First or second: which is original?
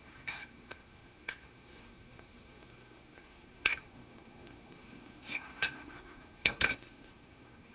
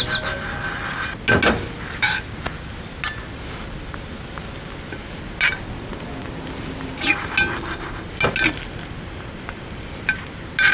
second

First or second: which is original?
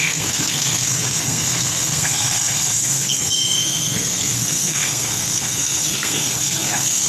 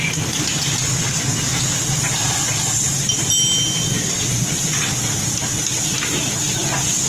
second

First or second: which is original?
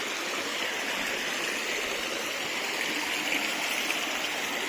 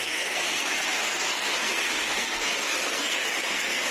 first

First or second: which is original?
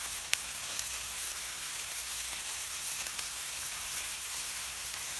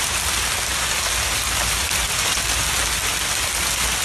second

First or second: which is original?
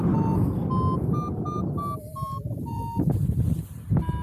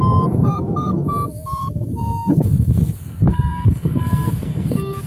first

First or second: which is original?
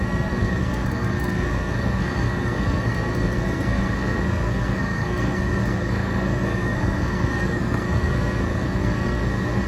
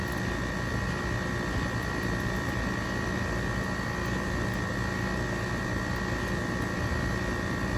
second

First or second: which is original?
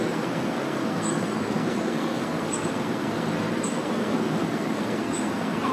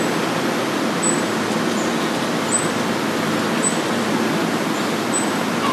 second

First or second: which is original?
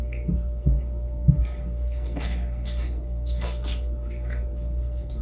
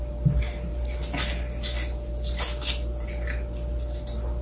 second